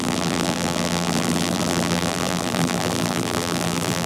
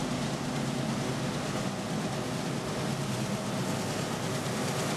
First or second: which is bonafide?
second